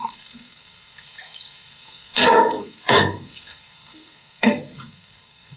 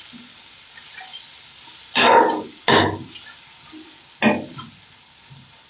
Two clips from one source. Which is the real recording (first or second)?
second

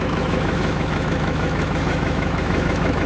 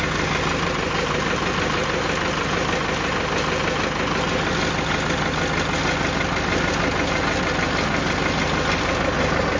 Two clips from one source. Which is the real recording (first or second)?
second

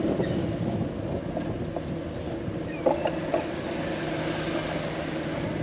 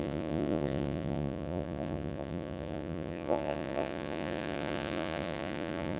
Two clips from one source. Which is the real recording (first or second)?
first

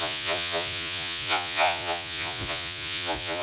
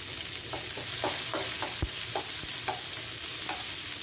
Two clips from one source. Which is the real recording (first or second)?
second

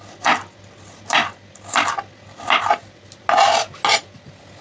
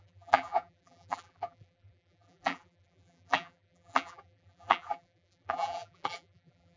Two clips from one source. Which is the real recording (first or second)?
first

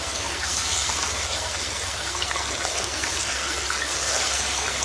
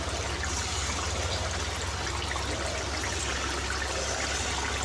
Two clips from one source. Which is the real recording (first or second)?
second